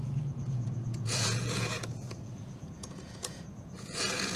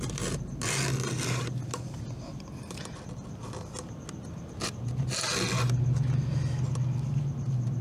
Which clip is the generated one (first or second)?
first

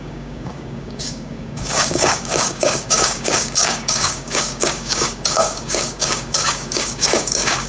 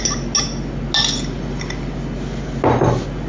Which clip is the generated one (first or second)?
first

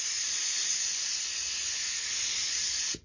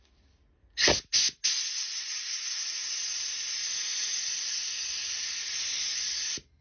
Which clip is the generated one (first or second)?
first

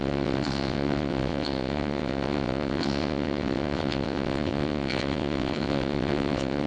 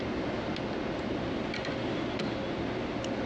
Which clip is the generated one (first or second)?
first